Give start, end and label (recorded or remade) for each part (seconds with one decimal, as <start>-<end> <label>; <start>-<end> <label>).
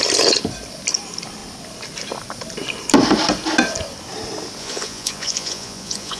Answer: 0.0-4.6 recorded; 4.6-6.2 remade